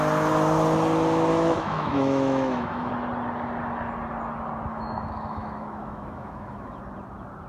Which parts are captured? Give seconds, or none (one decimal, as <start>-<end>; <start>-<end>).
0.0-1.3; 2.9-4.7; 6.8-7.5